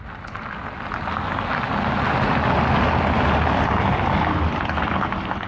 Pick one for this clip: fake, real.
real